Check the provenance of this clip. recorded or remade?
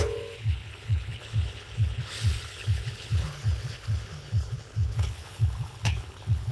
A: remade